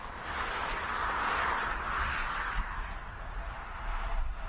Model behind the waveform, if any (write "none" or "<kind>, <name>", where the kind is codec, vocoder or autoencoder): none